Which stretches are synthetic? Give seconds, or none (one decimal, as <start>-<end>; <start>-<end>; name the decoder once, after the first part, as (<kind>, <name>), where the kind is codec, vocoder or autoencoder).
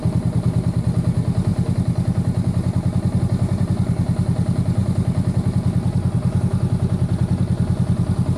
none